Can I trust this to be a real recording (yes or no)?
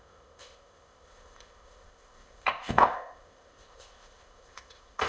no